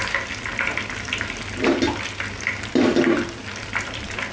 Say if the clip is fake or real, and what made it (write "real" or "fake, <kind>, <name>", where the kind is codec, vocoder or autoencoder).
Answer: real